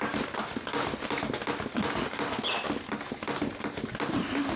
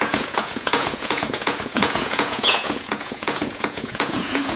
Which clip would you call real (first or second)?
first